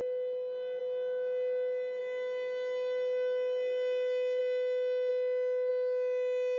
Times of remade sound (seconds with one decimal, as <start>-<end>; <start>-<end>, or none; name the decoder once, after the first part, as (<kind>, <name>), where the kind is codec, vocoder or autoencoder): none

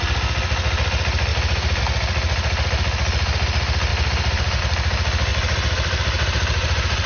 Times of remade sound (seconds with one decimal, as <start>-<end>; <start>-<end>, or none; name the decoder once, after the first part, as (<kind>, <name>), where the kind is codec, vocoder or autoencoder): 1.3-1.8 (vocoder, BigVGAN v2); 3.9-4.6; 5.3-7.1

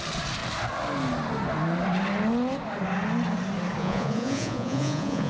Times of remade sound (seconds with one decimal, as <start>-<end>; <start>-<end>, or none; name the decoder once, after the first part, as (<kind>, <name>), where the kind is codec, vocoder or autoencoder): 3.8-5.3 (vocoder, Vocos)